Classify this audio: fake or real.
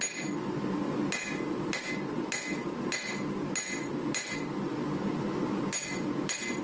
real